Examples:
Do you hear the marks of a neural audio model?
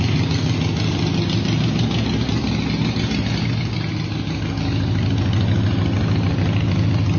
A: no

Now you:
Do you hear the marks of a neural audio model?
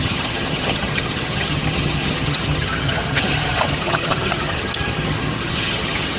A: yes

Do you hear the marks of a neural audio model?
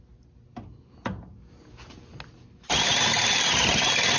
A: no